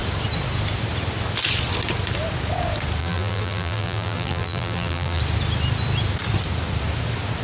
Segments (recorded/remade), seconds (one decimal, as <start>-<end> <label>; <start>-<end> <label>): 0.0-3.0 recorded; 3.0-5.2 remade; 5.2-7.4 recorded